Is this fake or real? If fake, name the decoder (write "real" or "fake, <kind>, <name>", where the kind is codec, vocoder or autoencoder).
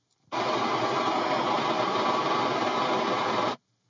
real